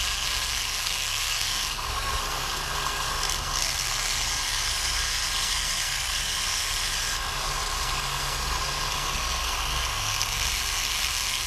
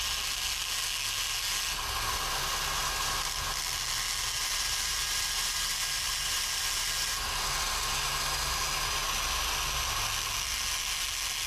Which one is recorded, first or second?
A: second